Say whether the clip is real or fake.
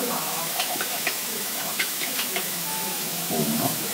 fake